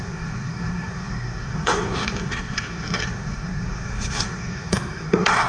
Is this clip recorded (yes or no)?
no